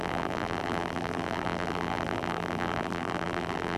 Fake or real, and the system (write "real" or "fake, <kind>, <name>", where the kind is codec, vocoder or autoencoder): fake, vocoder, BigVGAN v2